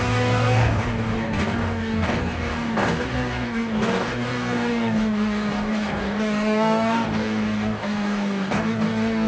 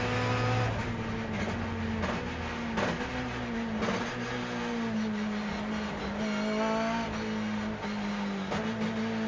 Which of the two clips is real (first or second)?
second